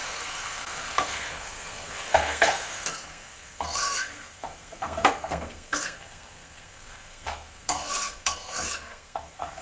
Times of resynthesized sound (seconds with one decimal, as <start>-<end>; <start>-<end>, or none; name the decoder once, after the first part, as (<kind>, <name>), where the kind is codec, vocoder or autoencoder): 0.0-9.6 (codec, SNAC)

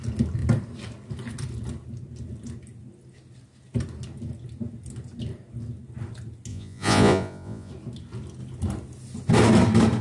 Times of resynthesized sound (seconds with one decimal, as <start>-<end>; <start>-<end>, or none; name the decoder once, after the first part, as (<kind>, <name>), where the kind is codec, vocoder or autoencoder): 6.5-7.7 (vocoder, Vocos)

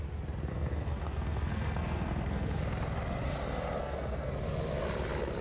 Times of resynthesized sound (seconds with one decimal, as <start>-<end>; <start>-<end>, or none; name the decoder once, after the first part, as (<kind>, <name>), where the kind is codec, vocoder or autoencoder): 0.5-2.6 (codec, SNAC); 3.8-4.3

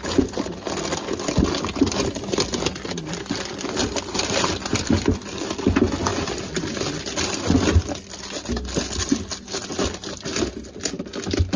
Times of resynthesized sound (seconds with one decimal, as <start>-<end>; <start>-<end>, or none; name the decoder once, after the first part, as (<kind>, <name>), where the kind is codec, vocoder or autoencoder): none